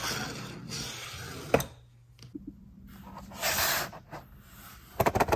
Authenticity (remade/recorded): recorded